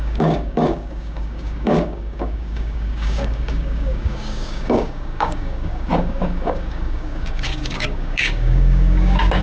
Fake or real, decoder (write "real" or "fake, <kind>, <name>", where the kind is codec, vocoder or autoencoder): fake, codec, DAC